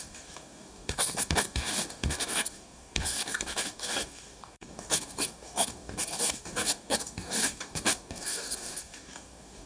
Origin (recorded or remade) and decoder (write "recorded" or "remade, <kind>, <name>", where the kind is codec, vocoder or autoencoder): remade, codec, DAC